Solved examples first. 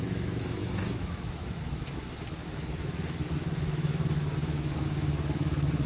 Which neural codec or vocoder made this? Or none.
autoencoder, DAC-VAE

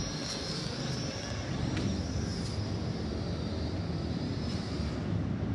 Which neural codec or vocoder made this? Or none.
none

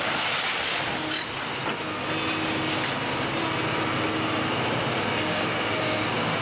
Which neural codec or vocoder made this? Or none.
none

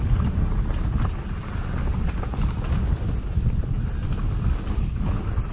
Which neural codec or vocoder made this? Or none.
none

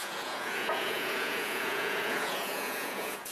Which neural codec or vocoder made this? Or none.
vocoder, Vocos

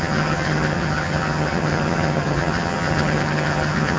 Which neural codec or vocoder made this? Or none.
vocoder, HiFi-GAN